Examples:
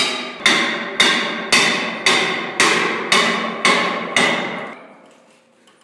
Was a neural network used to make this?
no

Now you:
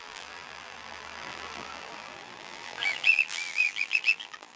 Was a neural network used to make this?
yes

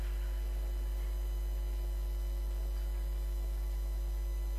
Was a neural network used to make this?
no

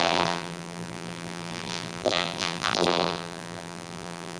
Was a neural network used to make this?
yes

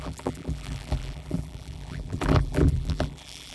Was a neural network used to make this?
yes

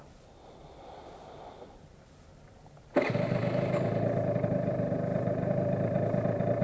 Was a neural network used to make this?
no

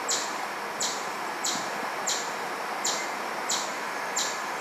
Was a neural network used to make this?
no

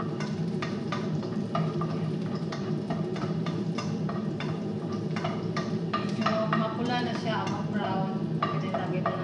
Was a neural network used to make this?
yes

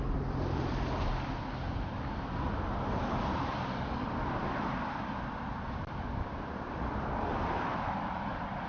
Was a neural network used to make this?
yes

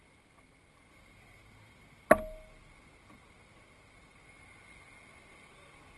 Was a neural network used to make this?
no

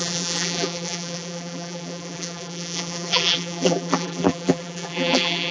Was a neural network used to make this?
yes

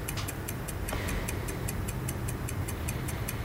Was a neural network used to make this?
no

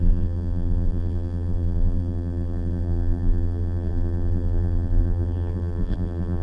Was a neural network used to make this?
yes